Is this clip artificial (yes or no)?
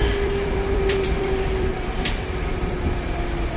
yes